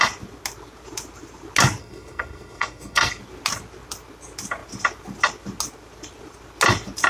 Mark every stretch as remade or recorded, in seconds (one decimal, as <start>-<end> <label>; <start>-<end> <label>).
0.0-1.8 recorded; 1.8-3.2 remade; 3.2-7.1 recorded